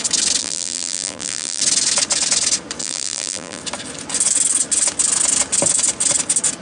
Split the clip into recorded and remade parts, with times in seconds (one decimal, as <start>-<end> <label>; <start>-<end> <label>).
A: 0.0-0.4 recorded; 0.4-1.6 remade; 1.6-2.8 recorded; 2.8-3.6 remade; 3.6-6.6 recorded